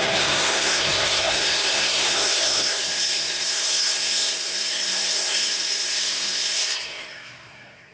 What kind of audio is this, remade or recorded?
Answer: remade